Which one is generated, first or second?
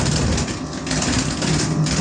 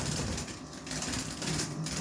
second